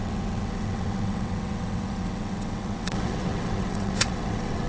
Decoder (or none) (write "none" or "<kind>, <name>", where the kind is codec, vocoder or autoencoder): vocoder, WaveNeXt